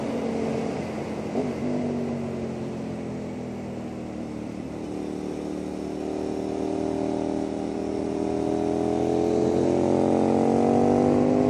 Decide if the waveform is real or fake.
real